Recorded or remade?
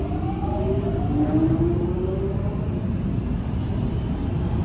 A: recorded